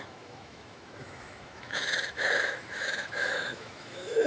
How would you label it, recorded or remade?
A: remade